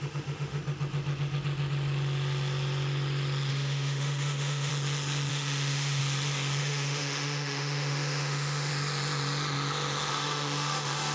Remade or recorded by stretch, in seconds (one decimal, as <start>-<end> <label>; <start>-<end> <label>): 0.0-0.6 remade; 0.6-3.5 recorded; 3.5-4.7 remade; 4.7-5.3 recorded; 5.3-6.0 remade; 6.0-6.6 recorded; 6.6-8.7 remade; 8.7-10.1 recorded; 10.1-11.1 remade

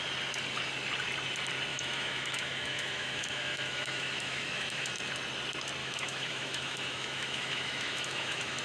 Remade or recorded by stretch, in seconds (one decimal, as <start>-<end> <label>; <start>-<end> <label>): 0.0-1.7 recorded; 1.7-4.9 remade; 4.9-5.8 recorded; 5.8-8.6 remade

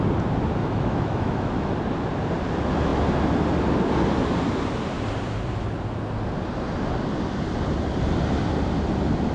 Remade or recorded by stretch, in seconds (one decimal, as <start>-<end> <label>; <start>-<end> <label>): 0.0-0.6 recorded; 0.6-1.7 remade; 1.7-9.3 recorded

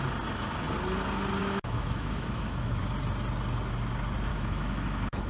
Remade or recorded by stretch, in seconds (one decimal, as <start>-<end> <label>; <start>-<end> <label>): 0.0-1.4 recorded; 1.4-2.8 remade; 2.8-4.3 recorded; 4.3-5.3 remade